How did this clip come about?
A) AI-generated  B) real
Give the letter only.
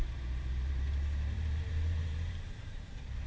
A